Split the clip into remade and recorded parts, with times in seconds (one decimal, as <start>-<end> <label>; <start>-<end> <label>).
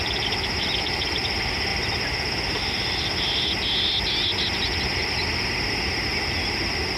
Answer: 0.0-7.0 recorded